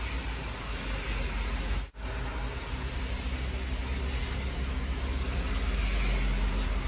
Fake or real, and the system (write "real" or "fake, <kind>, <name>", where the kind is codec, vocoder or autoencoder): real